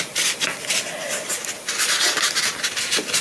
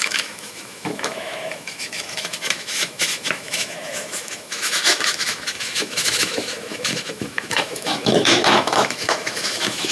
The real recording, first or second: first